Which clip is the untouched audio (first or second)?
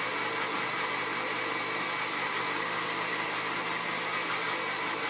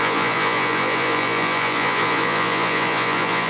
first